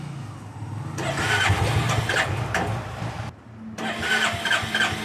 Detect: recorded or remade recorded